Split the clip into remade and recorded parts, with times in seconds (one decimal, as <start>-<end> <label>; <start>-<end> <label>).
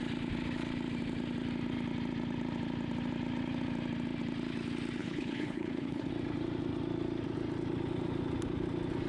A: 0.0-5.0 recorded; 5.0-6.1 remade; 6.1-9.1 recorded